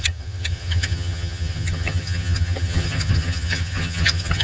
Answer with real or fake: fake